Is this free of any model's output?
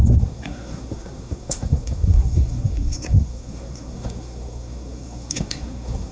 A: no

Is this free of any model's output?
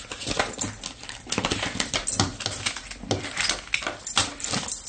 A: yes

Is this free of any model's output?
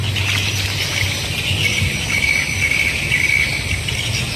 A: yes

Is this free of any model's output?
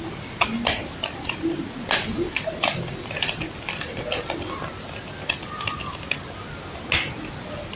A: yes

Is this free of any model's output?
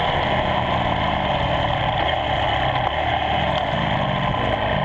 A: yes